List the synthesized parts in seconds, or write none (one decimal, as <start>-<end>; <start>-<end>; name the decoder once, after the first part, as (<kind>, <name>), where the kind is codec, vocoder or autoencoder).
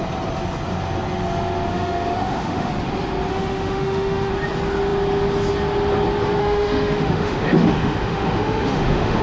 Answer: 1.7-2.7 (autoencoder, DAC-VAE); 3.3-4.3; 6.4-9.2